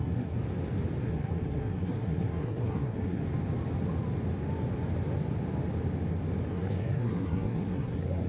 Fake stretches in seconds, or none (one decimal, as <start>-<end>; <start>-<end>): 0.0-0.4; 1.0-3.2; 6.5-8.3